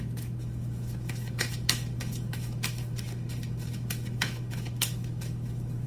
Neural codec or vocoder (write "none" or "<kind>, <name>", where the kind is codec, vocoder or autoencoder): autoencoder, DAC-VAE